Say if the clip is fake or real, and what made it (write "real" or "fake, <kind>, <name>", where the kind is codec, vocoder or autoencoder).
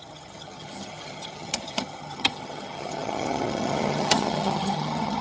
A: fake, vocoder, HiFi-GAN